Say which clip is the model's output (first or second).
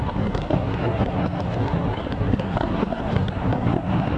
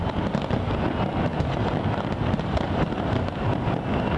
first